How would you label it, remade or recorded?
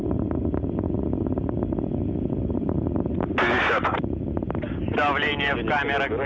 recorded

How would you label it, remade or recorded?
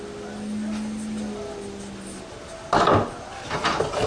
recorded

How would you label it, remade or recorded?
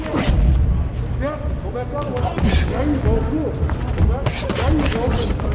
recorded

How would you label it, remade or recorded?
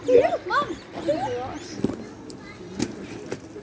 recorded